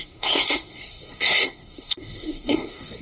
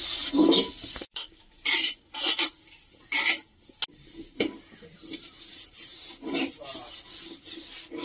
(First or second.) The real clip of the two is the second